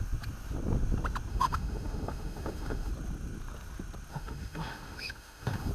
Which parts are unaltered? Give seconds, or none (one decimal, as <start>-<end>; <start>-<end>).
0.0-1.3; 2.9-4.1